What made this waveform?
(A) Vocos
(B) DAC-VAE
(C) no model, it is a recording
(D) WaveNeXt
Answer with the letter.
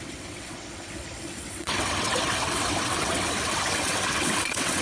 D